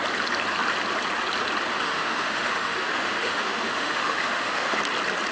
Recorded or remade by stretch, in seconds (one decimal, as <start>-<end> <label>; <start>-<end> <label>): 0.0-1.7 recorded; 1.7-4.8 remade; 4.8-5.3 recorded